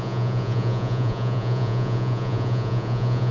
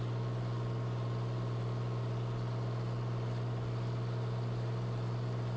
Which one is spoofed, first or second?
first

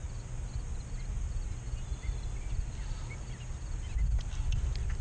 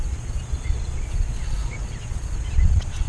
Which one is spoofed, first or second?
second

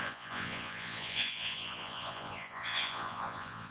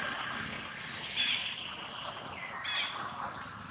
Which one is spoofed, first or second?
first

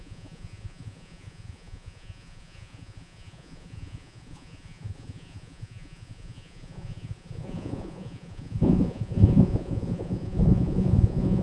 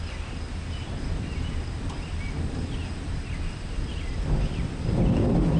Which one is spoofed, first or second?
first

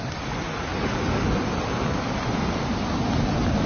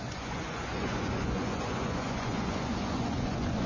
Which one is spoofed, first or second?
second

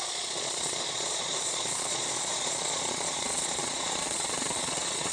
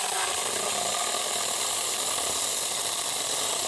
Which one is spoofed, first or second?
first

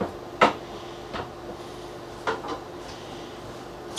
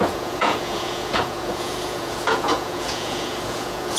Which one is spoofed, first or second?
second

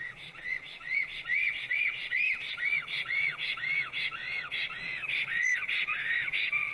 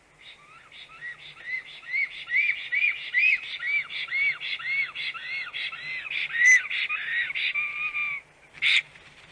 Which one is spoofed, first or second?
first